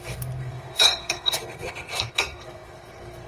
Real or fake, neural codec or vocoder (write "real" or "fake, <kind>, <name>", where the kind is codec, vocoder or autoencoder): fake, codec, SNAC